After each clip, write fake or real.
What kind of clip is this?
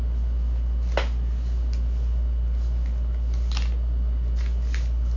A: real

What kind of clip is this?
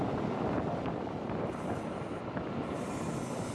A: real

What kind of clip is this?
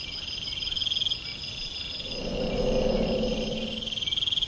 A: real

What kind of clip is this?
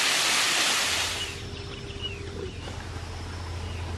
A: real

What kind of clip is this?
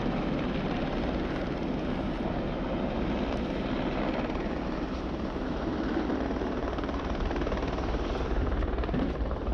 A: fake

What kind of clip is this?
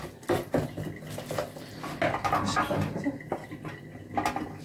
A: real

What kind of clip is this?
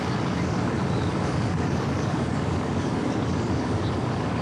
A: fake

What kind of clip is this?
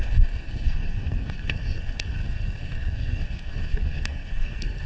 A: fake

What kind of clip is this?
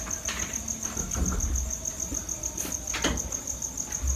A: real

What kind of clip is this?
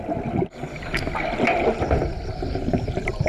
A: real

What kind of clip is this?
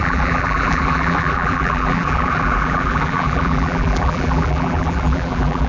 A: fake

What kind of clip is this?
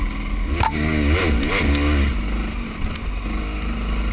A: real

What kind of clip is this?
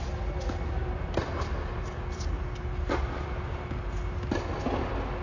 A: real